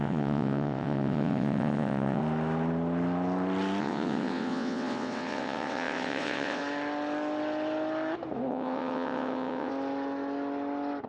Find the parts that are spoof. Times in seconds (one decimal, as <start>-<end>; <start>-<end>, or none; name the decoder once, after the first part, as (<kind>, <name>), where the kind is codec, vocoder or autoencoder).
0.0-2.2 (vocoder, WaveNeXt); 3.8-6.6; 8.5-9.7